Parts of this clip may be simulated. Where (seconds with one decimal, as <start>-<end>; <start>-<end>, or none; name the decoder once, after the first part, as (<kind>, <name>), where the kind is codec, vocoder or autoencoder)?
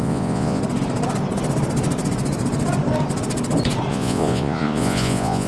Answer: 0.0-0.6 (vocoder, Vocos); 3.9-5.5